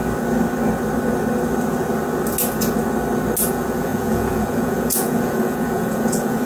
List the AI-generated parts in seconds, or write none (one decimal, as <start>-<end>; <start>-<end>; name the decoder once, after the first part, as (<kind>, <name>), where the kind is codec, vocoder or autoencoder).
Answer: 3.5-6.5 (vocoder, Vocos)